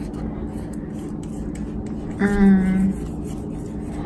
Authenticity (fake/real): real